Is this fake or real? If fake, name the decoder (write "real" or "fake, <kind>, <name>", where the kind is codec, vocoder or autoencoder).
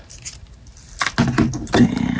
real